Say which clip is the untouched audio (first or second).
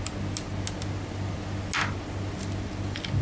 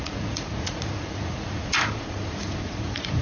first